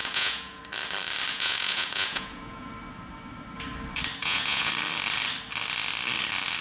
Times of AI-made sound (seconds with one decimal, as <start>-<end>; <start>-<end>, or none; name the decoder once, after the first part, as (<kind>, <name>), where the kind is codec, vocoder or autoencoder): 0.0-0.6 (vocoder, Vocos); 1.3-2.7; 4.2-4.7